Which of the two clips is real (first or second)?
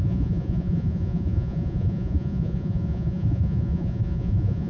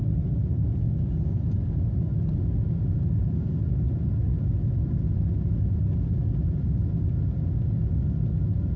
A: second